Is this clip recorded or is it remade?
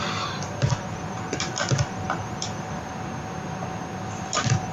remade